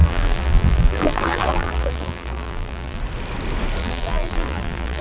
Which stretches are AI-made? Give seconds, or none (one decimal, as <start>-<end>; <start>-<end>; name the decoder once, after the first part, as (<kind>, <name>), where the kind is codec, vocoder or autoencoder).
0.0-3.0 (vocoder, BigVGAN v2); 3.8-5.0